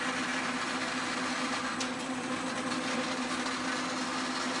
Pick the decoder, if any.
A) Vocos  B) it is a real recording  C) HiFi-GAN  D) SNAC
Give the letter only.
B